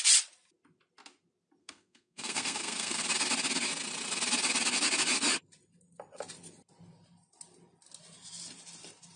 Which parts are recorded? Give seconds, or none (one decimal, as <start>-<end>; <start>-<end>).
0.0-1.6; 3.0-9.2